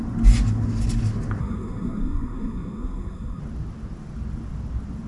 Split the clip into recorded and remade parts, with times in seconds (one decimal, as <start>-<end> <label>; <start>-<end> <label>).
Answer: 0.0-1.4 recorded; 1.4-3.4 remade; 3.4-5.1 recorded